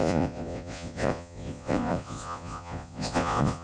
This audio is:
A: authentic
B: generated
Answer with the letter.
B